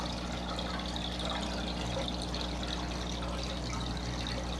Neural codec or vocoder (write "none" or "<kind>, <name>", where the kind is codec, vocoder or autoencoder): none